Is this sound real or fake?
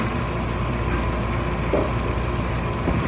real